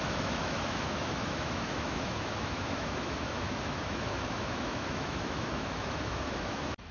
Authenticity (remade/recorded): remade